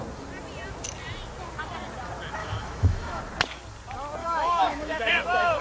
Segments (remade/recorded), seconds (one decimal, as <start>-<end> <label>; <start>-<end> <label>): 0.0-2.4 recorded; 2.4-3.2 remade; 3.2-4.2 recorded; 4.2-5.6 remade